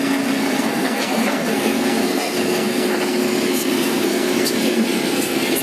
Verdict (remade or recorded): remade